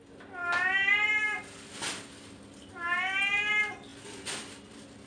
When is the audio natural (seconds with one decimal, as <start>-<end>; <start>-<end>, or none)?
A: 0.0-5.1